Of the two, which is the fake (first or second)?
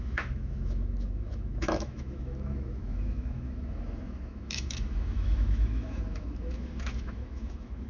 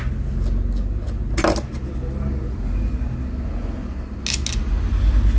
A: first